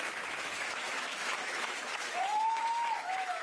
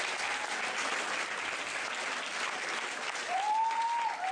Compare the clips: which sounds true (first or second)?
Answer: second